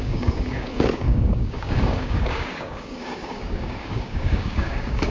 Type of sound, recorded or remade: remade